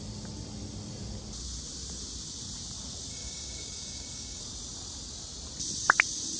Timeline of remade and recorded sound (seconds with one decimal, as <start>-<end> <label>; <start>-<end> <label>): 0.0-3.1 recorded; 3.1-4.4 remade; 4.4-6.4 recorded

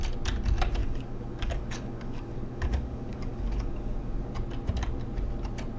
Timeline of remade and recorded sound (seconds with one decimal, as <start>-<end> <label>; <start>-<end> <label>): 0.0-0.8 recorded; 0.8-4.3 remade; 4.3-5.8 recorded